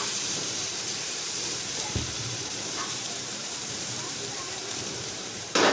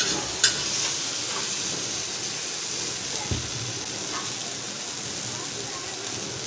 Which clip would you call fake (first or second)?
first